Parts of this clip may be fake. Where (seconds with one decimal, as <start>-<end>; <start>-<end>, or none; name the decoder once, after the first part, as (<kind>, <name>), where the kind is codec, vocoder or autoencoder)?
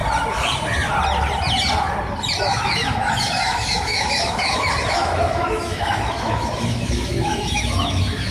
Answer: 2.4-8.3 (autoencoder, DAC-VAE)